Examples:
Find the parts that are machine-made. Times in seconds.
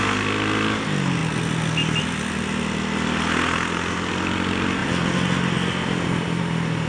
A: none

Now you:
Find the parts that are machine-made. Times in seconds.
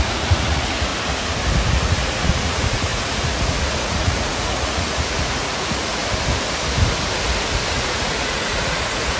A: 0.0-0.9 (vocoder, Vocos); 1.7-6.0; 7.7-9.2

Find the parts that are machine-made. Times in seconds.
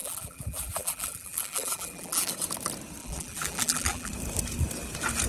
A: 0.0-2.3 (vocoder, BigVGAN v2); 3.0-4.1